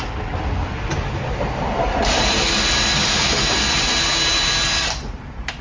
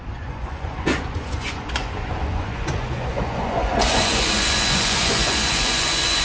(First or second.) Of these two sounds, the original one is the first